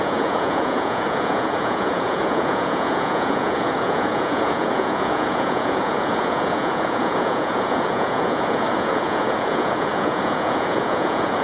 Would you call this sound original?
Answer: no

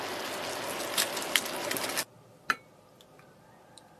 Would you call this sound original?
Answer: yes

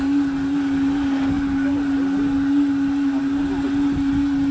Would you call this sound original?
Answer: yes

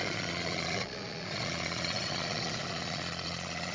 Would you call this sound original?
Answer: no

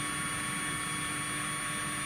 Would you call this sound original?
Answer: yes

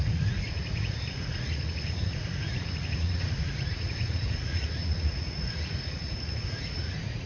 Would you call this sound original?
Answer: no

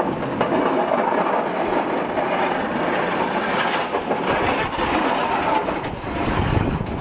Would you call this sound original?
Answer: yes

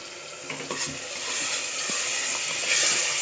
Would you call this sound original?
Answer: yes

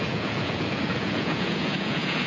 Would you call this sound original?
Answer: no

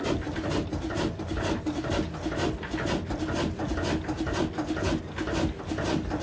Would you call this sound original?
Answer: yes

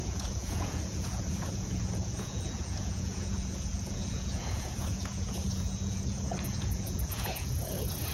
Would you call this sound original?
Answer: no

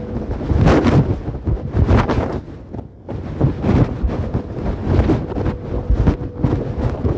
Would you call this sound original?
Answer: yes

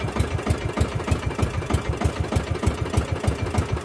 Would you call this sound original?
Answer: yes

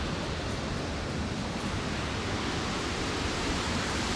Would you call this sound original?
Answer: yes